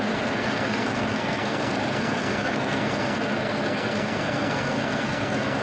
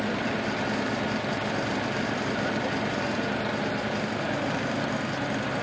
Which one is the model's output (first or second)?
first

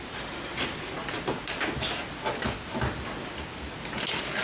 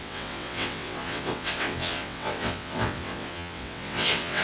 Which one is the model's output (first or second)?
second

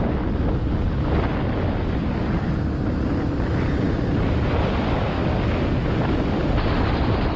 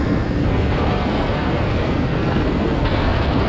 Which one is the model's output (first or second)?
second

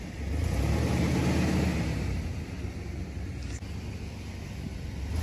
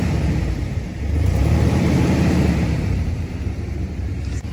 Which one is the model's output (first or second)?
second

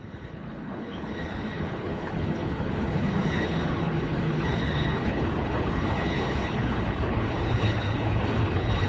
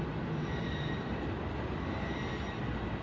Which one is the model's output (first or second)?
first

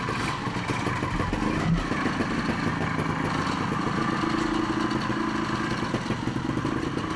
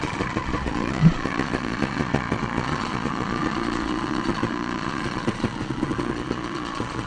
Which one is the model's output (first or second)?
second